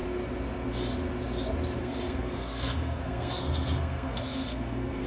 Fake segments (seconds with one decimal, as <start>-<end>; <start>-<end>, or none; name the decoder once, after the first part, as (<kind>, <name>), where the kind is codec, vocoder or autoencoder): 1.8-5.1 (codec, SNAC)